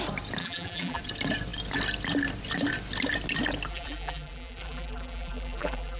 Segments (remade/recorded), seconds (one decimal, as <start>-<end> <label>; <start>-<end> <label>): 0.0-0.4 recorded; 0.4-1.0 remade; 1.0-3.7 recorded; 3.7-6.0 remade